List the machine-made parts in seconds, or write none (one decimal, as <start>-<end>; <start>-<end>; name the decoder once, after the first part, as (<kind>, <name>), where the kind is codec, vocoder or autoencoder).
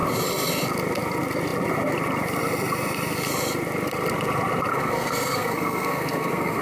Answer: 4.7-6.6 (codec, SNAC)